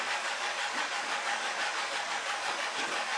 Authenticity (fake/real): fake